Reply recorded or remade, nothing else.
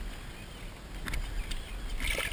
recorded